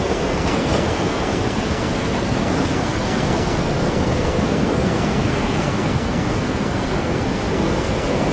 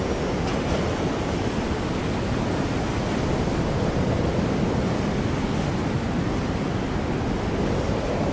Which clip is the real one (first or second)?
second